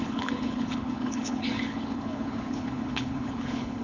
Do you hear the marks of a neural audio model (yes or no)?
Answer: yes